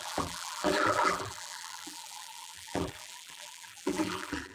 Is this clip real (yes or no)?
no